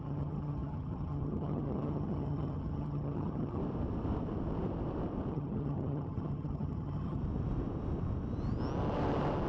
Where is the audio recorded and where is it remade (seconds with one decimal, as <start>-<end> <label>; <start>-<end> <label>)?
0.0-3.6 remade; 3.6-5.3 recorded; 5.3-7.2 remade; 7.2-9.5 recorded